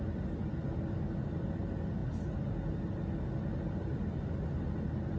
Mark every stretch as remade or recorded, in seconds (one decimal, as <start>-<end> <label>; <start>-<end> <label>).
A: 0.0-5.2 recorded